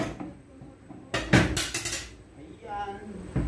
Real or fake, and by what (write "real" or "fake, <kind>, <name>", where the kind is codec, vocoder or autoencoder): real